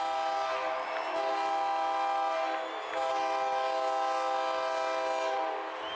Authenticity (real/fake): real